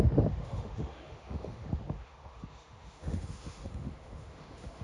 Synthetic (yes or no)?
yes